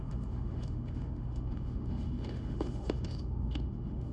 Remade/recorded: remade